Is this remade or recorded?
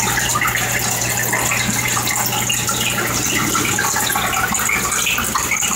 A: recorded